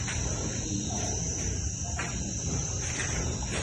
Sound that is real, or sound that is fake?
fake